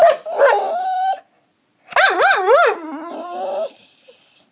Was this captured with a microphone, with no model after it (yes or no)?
yes